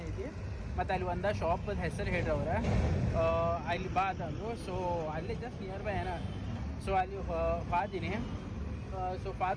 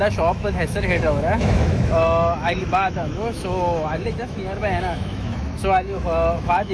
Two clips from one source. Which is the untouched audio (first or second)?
first